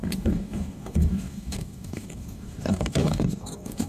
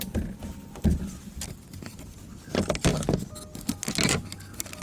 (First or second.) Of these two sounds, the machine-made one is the first